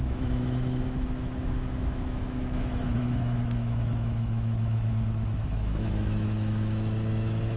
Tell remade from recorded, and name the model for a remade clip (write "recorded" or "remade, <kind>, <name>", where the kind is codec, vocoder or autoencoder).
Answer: remade, autoencoder, DAC-VAE